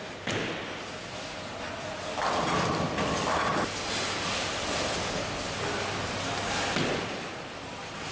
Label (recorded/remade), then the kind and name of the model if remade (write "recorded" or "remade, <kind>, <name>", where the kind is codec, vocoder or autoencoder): recorded